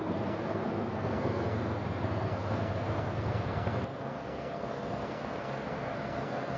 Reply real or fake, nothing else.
fake